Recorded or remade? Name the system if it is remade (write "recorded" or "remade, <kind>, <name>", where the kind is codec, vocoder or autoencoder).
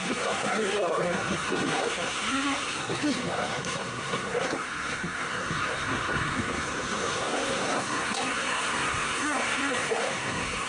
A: remade, codec, SNAC